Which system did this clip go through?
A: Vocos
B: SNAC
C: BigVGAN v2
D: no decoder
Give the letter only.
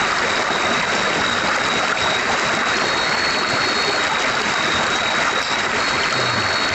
C